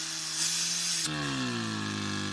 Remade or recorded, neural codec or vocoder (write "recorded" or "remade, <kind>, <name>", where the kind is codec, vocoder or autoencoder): recorded